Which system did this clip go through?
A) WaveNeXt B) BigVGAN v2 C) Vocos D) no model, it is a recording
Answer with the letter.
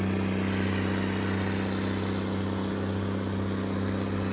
D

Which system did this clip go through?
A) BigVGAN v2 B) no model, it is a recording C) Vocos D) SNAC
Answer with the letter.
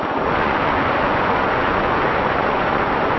C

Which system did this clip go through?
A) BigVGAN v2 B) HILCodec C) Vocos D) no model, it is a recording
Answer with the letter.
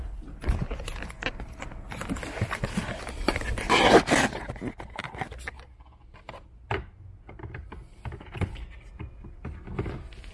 D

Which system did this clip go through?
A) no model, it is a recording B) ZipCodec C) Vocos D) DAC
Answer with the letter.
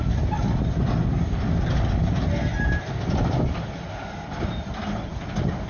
A